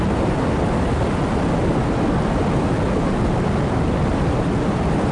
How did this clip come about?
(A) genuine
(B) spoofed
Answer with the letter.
A